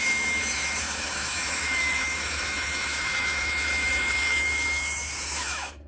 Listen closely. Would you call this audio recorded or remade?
remade